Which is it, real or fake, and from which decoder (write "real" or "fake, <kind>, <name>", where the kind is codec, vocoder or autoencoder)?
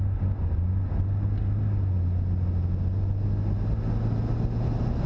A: real